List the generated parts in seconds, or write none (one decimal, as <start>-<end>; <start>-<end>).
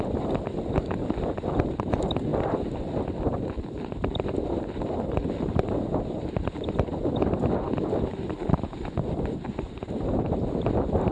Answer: none